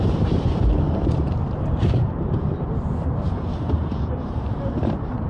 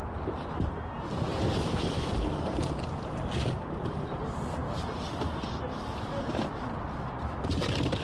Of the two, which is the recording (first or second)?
second